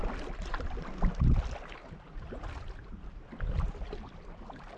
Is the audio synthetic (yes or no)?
no